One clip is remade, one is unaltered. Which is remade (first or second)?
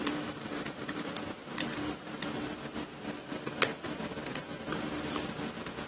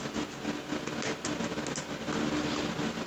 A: first